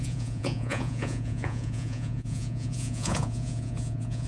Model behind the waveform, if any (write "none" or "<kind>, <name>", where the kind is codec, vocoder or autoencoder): vocoder, Vocos